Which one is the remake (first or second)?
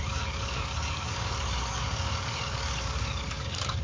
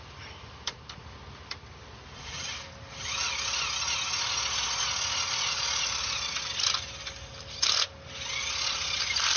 first